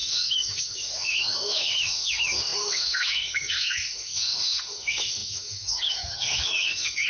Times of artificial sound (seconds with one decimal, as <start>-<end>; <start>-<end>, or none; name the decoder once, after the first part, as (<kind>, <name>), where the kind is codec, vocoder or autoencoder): 0.0-7.1 (autoencoder, DAC-VAE)